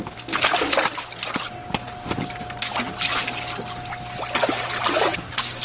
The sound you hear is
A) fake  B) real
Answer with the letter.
B